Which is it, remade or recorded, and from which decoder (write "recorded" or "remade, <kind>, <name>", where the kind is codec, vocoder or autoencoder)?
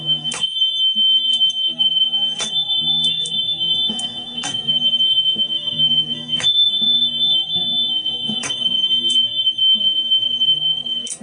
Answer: remade, codec, SNAC